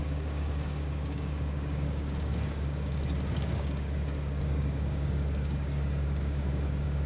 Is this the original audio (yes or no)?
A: no